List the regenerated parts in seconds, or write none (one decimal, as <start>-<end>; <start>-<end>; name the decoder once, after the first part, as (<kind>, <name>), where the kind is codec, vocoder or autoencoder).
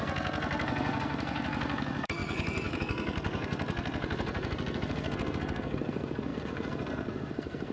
0.0-7.7 (codec, SNAC)